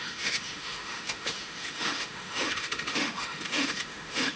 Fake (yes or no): yes